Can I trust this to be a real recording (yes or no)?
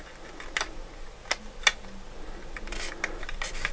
yes